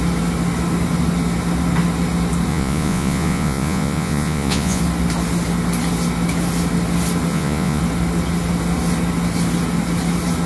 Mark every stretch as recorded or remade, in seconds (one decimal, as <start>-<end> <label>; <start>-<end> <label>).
0.0-2.5 recorded; 2.5-4.8 remade; 4.8-7.3 recorded; 7.3-7.8 remade; 7.8-10.5 recorded